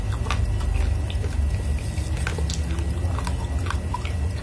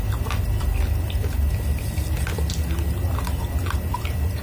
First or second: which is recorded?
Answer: first